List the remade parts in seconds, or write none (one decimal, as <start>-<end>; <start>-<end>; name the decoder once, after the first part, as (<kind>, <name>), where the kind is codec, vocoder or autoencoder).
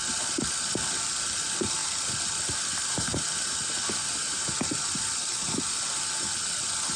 0.0-1.0 (vocoder, BigVGAN v2); 1.8-5.6